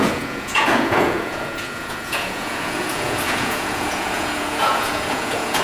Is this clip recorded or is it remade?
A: remade